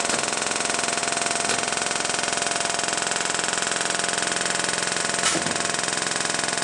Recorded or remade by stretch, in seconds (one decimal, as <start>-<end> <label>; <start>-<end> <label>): 0.0-6.6 recorded